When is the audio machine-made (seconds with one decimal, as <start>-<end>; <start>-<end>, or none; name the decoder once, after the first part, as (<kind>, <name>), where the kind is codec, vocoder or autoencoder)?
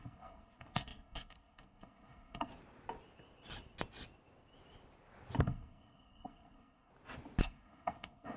0.0-2.5 (codec, SNAC); 5.4-6.9; 7.4-8.4